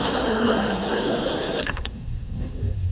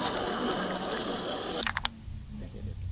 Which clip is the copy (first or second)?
first